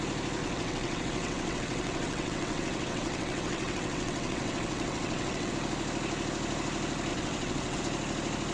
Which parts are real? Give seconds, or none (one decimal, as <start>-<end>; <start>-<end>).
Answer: 0.0-0.4; 5.5-7.1; 7.8-8.5